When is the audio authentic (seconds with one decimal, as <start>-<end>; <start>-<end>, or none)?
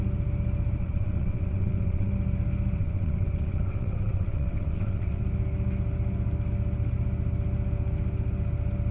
0.0-0.8; 2.1-2.8; 5.2-8.9